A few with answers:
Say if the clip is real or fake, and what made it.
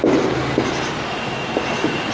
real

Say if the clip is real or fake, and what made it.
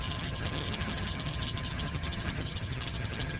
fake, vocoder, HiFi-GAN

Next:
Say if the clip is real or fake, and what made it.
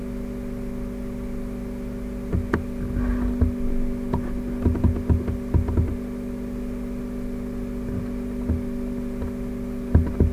real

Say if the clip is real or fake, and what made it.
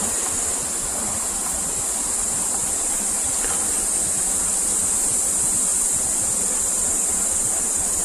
real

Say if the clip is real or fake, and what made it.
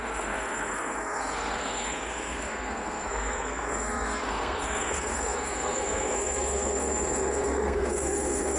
fake, codec, SNAC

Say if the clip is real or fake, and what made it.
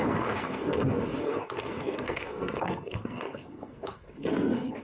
fake, codec, SNAC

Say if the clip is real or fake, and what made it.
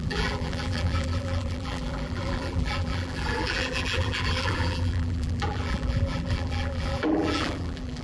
fake, vocoder, BigVGAN v2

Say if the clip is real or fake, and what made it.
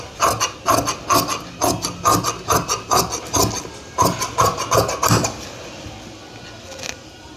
real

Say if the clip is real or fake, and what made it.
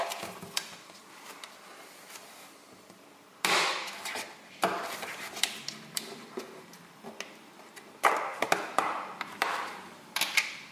real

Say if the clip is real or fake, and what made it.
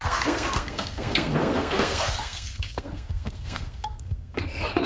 fake, codec, SNAC